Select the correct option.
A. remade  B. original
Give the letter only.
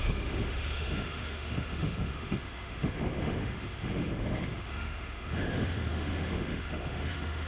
A